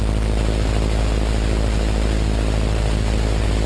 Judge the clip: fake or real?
real